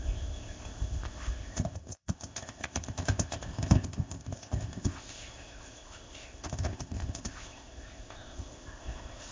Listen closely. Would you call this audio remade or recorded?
remade